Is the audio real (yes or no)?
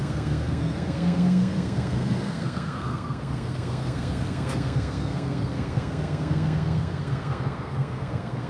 no